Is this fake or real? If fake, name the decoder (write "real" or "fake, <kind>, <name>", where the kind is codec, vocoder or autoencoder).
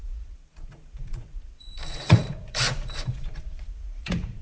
fake, vocoder, Vocos